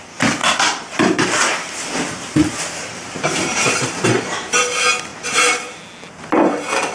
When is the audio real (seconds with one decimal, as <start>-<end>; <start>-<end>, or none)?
0.0-0.4; 4.5-5.1; 5.7-6.9